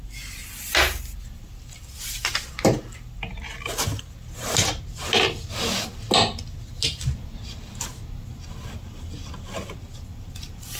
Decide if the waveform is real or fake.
real